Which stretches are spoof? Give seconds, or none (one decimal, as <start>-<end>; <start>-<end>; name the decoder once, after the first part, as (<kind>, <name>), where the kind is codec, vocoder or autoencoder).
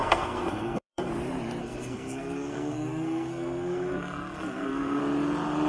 0.0-1.1 (codec, SNAC); 1.6-5.0